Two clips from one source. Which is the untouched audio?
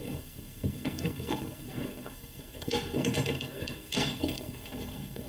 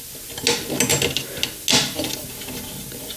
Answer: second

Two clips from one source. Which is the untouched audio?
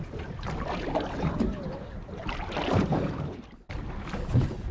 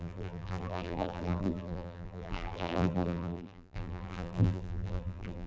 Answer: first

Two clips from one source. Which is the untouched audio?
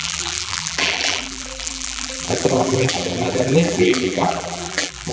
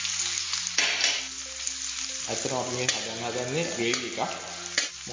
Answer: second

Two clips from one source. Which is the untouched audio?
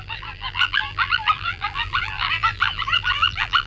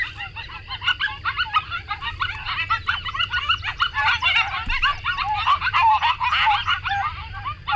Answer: second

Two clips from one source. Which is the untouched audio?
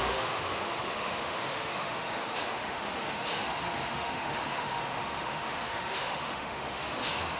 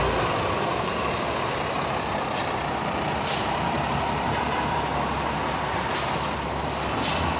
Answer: second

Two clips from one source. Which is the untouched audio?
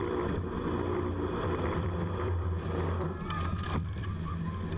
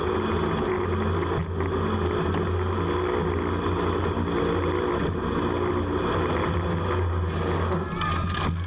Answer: second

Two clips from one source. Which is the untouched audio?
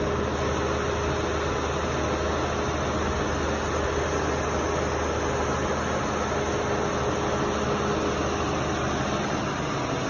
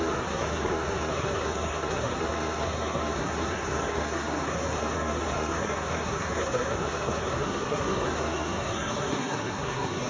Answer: first